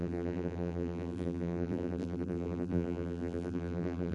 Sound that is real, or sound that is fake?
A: fake